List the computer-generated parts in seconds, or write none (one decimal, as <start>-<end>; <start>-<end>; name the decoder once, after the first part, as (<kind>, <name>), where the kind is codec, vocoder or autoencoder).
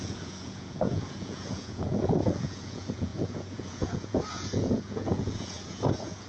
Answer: 0.0-6.3 (vocoder, Vocos)